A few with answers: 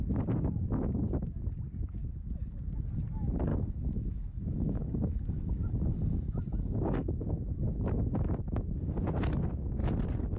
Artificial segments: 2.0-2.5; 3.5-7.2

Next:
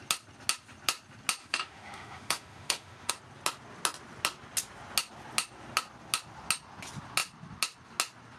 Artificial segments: 1.4-3.1

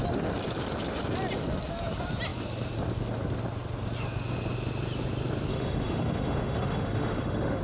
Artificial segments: 5.5-7.6

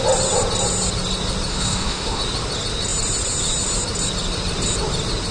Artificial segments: 1.5-2.2

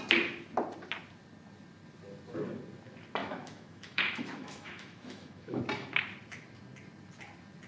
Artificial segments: 3.2-5.6

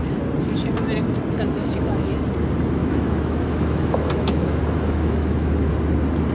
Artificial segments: 1.6-2.1; 2.8-5.7

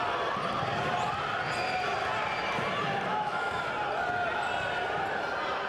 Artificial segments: 3.1-3.7